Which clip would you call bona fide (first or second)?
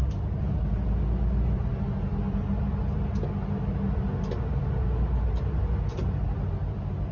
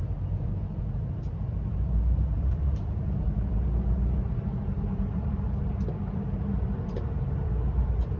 first